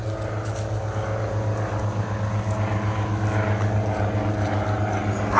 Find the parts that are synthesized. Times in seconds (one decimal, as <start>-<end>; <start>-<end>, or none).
none